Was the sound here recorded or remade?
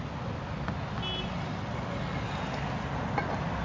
recorded